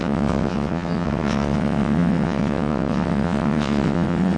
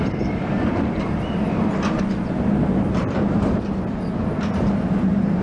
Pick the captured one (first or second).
second